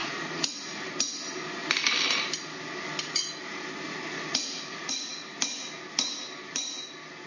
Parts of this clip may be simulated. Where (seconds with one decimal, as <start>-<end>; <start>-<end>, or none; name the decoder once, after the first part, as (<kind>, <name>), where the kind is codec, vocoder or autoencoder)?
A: 0.0-0.5 (vocoder, Vocos); 4.3-5.1